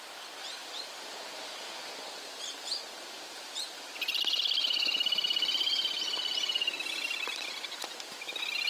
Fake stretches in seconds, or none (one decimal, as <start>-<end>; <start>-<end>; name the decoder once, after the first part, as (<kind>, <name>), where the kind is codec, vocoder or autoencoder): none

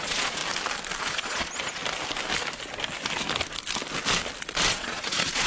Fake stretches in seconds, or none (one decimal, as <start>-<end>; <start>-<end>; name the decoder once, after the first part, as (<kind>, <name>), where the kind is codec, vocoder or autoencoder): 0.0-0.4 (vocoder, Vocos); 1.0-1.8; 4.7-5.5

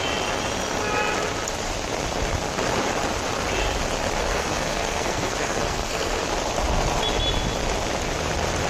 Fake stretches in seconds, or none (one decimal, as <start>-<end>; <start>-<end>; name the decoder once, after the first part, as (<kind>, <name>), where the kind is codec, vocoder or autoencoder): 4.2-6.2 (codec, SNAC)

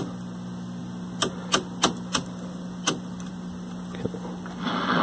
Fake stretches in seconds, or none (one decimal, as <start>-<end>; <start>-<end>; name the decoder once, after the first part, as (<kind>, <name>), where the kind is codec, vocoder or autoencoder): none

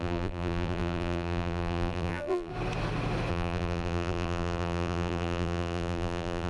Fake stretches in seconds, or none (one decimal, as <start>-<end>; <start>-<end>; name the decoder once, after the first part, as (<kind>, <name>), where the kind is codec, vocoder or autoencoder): 0.0-2.5 (vocoder, BigVGAN v2); 3.3-6.5

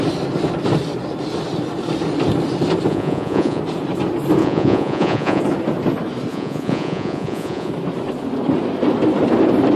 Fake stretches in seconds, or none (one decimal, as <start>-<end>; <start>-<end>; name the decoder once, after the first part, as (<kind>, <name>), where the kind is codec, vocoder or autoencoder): 2.9-3.6 (vocoder, Vocos); 4.4-5.4; 6.3-7.7

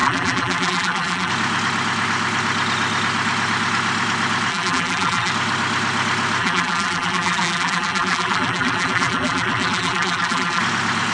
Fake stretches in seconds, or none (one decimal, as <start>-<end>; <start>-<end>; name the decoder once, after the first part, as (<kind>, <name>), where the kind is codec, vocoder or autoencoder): 0.0-1.3 (vocoder, BigVGAN v2); 4.5-5.3; 6.4-10.6

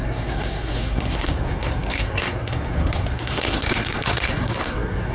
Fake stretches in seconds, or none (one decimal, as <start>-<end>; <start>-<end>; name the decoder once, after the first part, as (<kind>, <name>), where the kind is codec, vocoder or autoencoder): 0.0-5.1 (codec, SNAC)